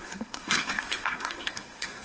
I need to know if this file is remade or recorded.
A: remade